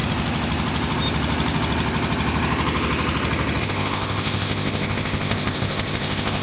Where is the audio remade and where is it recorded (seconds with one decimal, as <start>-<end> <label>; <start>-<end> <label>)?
0.0-3.6 recorded; 3.6-6.4 remade